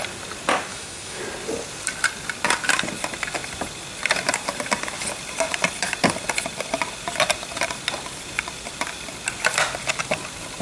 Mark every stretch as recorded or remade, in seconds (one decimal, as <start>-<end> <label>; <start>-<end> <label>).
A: 0.0-0.7 recorded; 0.7-1.2 remade; 1.2-10.6 recorded